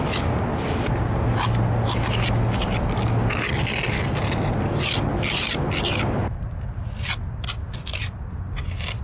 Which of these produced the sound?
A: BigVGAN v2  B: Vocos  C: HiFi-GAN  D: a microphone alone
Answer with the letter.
D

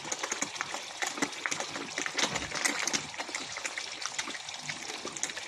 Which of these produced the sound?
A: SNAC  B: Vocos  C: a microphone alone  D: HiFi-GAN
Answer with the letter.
C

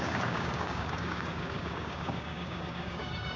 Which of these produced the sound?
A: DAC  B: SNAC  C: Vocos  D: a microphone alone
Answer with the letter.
A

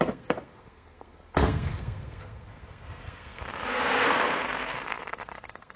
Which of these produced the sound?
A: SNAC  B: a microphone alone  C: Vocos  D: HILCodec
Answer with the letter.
A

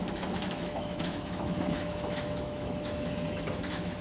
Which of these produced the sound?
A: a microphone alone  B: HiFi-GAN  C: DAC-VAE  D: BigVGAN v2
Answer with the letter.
C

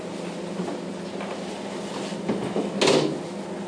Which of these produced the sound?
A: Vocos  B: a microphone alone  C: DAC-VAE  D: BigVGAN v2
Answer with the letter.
B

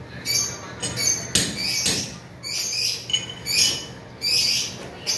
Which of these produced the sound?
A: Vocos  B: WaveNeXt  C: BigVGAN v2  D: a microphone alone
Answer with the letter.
D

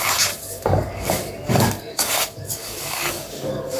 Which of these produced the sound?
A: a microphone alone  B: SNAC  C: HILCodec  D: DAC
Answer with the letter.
D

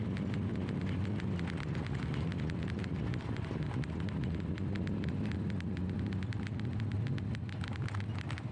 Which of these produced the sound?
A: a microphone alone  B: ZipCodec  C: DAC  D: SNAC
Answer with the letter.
A